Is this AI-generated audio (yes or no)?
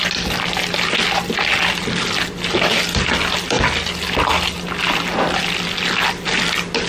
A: no